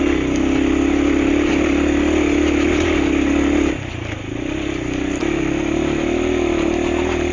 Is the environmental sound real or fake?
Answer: real